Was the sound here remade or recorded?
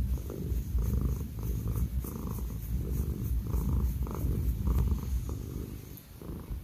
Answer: recorded